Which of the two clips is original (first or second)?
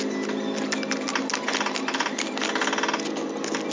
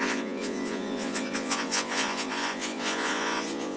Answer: first